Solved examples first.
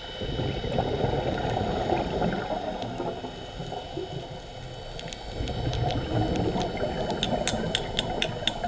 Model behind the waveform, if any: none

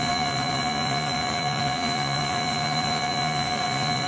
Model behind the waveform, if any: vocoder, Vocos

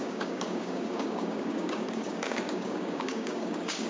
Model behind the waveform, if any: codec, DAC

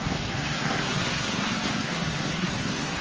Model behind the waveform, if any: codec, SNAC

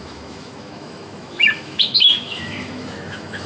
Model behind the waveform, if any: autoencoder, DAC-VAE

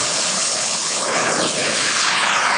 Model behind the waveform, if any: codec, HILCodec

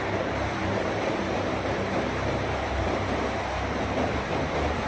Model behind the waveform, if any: vocoder, BigVGAN v2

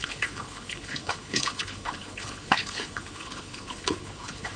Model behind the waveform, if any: codec, HILCodec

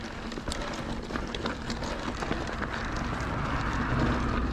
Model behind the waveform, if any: none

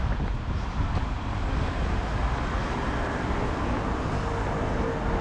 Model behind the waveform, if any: none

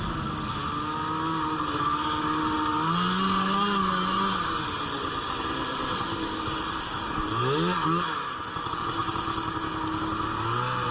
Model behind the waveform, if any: none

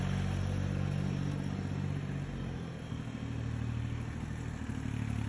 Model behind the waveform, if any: none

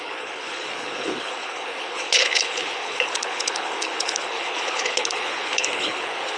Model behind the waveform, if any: codec, HILCodec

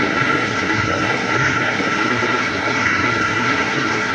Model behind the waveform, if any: codec, SNAC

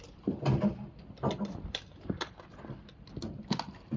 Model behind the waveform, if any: none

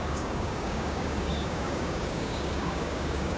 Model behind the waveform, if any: codec, DAC